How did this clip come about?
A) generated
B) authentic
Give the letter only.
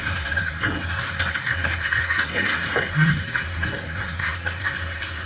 A